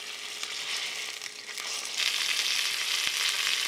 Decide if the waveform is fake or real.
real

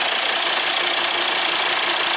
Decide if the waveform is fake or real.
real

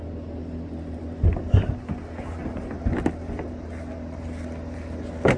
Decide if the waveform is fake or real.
real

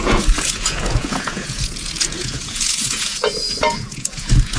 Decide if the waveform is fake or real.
fake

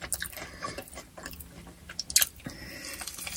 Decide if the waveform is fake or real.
real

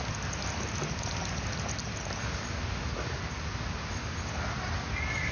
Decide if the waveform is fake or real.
real